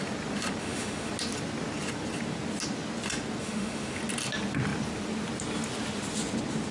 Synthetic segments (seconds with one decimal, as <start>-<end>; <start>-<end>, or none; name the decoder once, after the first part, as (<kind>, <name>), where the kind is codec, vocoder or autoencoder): 0.6-1.1 (autoencoder, DAC-VAE); 3.4-4.0